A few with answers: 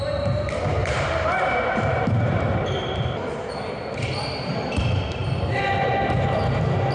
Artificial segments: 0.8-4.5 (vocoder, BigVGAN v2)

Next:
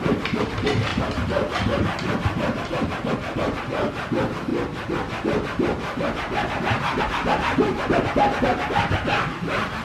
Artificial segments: 0.0-4.5 (vocoder, BigVGAN v2); 7.0-9.8

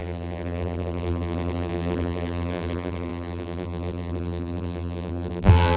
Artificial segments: 0.0-5.8 (vocoder, BigVGAN v2)

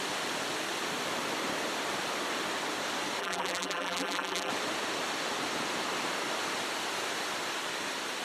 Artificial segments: 3.2-4.5 (vocoder, BigVGAN v2)

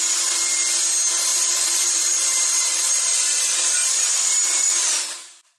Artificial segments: 1.3-4.7 (vocoder, BigVGAN v2)

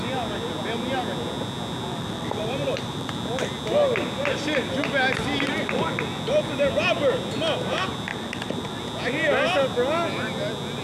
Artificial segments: 1.9-3.1 (vocoder, BigVGAN v2); 8.1-8.8

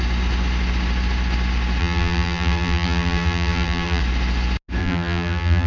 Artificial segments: 1.8-4.0 (vocoder, BigVGAN v2); 4.8-5.7

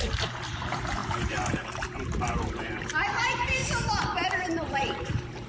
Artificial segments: 0.0-3.6 (vocoder, BigVGAN v2); 4.4-5.5